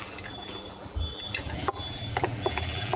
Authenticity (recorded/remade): remade